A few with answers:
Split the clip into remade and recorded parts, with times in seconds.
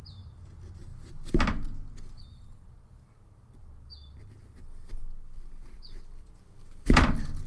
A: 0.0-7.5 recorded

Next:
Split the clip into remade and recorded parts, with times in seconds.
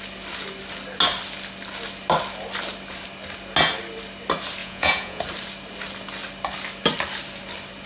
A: 0.0-4.6 recorded; 4.6-5.2 remade; 5.2-7.9 recorded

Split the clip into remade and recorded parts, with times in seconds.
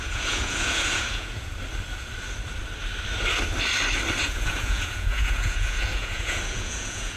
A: 0.0-1.5 remade; 1.5-4.2 recorded; 4.2-7.2 remade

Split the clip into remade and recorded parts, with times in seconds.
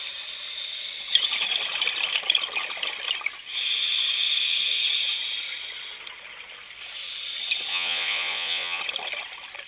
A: 0.0-7.7 recorded; 7.7-8.8 remade; 8.8-9.7 recorded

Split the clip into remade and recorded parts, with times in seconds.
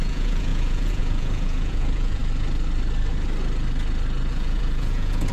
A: 0.0-2.2 remade; 2.2-4.3 recorded; 4.3-5.3 remade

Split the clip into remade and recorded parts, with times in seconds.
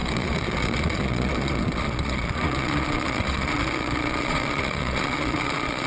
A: 0.0-5.9 remade